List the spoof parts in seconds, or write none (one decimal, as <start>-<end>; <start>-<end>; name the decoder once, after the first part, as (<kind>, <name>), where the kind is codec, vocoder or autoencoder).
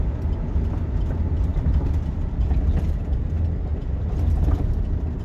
none